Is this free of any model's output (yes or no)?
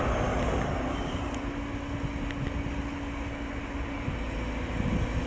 yes